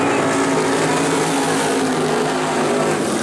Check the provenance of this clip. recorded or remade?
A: recorded